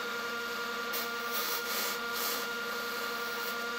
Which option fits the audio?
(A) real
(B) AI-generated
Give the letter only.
B